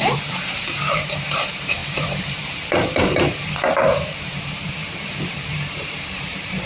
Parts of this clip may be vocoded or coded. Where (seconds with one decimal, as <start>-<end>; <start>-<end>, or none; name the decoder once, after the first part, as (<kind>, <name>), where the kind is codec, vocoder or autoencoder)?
0.0-6.7 (vocoder, BigVGAN v2)